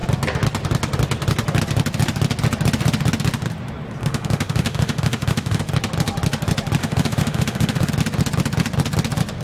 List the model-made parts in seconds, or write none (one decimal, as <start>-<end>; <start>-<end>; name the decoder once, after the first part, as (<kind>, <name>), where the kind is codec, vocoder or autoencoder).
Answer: 4.0-5.6 (autoencoder, DAC-VAE); 6.8-7.9